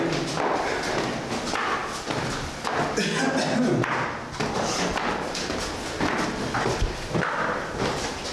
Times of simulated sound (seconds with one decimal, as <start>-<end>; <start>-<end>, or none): none